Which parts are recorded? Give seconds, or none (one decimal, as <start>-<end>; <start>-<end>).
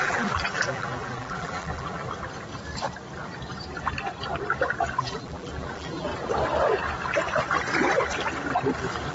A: 2.0-5.0; 6.1-9.1